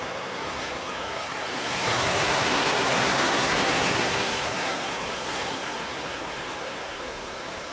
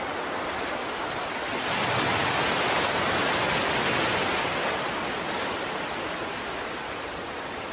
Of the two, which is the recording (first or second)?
second